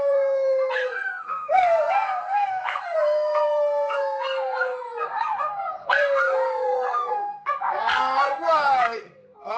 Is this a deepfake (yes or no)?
yes